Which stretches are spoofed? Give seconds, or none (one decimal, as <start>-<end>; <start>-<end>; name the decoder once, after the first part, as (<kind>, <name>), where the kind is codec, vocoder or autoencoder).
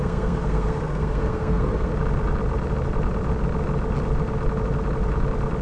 0.0-1.9 (codec, SNAC)